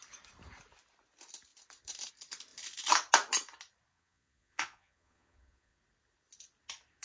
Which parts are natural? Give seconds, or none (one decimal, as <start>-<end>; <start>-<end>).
0.0-3.9; 5.8-7.0

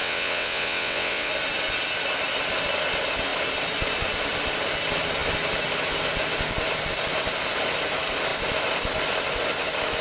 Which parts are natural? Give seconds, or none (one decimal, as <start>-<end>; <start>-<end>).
1.3-10.0

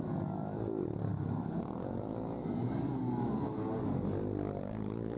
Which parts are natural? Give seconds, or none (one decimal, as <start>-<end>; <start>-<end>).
0.0-5.2

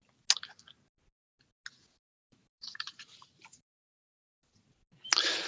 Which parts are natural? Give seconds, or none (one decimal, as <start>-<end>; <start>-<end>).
0.0-2.3; 4.1-5.5

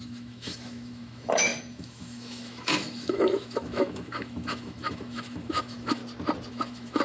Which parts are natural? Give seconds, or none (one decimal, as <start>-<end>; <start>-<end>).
6.0-6.5